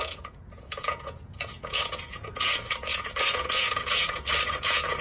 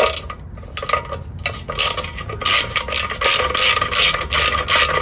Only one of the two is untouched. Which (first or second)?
second